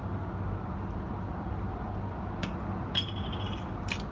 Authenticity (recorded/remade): recorded